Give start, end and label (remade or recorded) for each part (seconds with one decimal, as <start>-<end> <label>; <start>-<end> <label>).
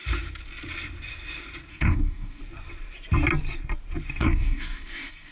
0.0-1.7 recorded; 1.7-2.4 remade; 2.4-4.2 recorded; 4.2-5.3 remade